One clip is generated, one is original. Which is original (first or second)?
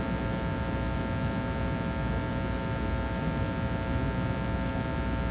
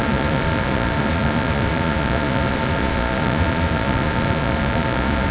first